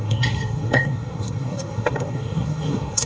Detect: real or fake fake